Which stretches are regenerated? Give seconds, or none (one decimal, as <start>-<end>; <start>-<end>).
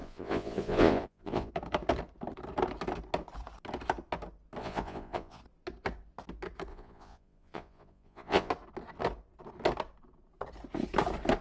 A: 0.0-1.5; 4.6-5.4; 6.7-8.5